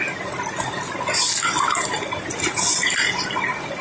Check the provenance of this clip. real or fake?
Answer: real